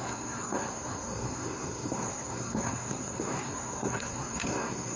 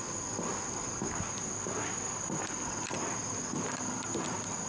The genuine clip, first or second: second